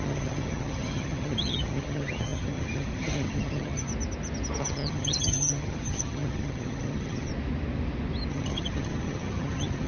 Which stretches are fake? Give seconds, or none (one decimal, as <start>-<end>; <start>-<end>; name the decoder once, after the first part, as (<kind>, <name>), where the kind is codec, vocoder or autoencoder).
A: 0.0-3.9 (vocoder, HiFi-GAN); 4.6-7.3; 8.3-9.9